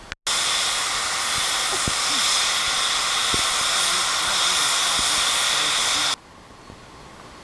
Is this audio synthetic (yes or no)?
no